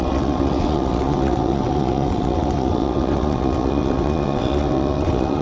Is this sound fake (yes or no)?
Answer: yes